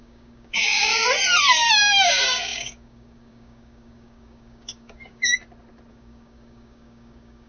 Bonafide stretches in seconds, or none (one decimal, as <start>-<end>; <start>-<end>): 0.9-1.7; 5.3-5.9